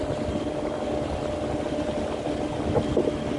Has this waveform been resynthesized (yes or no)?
no